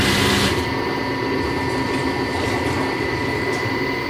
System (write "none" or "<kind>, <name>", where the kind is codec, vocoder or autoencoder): none